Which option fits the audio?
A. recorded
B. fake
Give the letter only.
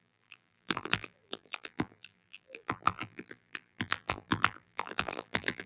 B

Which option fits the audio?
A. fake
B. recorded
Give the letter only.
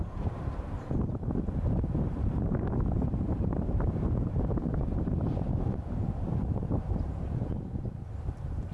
A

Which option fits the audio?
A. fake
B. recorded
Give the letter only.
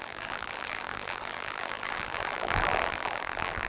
A